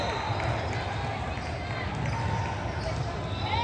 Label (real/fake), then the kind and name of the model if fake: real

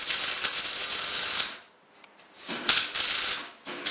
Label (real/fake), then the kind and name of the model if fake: real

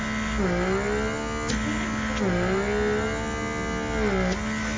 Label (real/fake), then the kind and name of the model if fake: real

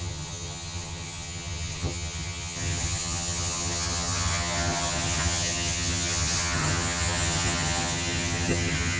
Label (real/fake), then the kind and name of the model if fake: fake, vocoder, HiFi-GAN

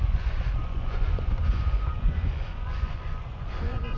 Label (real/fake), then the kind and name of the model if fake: fake, vocoder, Vocos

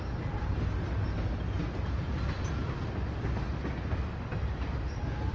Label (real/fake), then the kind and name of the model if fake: real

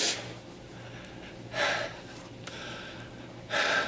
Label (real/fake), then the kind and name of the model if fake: real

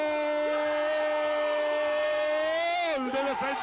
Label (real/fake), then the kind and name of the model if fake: real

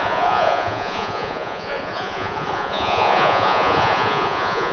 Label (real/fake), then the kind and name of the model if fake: fake, vocoder, Vocos